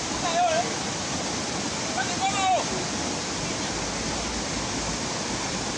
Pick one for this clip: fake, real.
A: real